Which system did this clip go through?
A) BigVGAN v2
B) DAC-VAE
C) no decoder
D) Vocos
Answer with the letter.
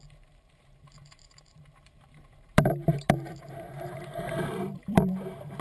A